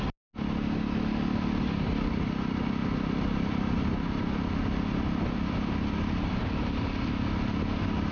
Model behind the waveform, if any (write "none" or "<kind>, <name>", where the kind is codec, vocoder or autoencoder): none